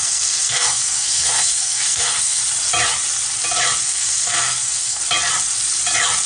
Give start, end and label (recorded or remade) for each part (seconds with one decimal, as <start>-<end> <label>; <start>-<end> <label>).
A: 0.0-2.4 remade; 2.4-3.8 recorded; 3.8-5.0 remade; 5.0-6.3 recorded